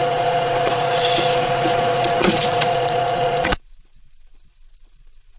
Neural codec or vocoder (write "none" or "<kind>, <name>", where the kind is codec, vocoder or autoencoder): vocoder, Vocos